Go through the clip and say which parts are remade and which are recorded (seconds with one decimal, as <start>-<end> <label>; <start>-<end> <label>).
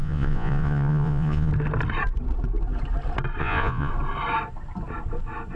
0.0-1.5 remade; 1.5-3.4 recorded; 3.4-3.9 remade; 3.9-5.6 recorded